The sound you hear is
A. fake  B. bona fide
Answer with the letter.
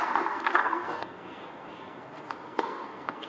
A